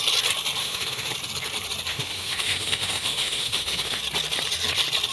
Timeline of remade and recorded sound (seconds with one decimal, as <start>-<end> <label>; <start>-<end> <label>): 0.0-0.6 recorded; 0.6-1.1 remade; 1.1-1.9 recorded; 1.9-4.0 remade; 4.0-5.1 recorded